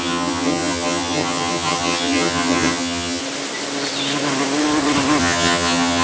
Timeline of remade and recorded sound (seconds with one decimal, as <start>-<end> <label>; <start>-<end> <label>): 0.0-3.2 remade; 3.2-5.2 recorded; 5.2-6.0 remade